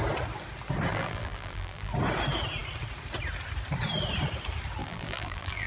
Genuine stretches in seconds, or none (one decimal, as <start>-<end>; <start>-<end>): 0.0-0.9; 1.9-4.8